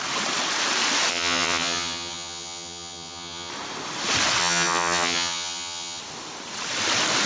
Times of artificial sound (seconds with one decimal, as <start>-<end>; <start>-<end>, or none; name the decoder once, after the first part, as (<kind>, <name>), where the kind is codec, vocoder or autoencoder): 1.1-3.5 (vocoder, HiFi-GAN); 4.4-6.0